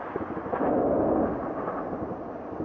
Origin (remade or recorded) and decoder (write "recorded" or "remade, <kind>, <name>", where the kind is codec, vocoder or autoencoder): recorded